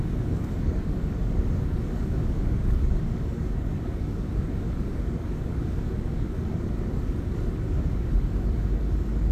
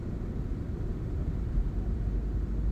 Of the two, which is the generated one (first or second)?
first